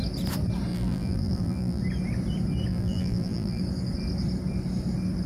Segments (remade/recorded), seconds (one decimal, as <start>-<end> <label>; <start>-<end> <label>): 0.0-0.7 recorded; 0.7-1.8 remade; 1.8-2.7 recorded; 2.7-3.6 remade; 3.6-5.3 recorded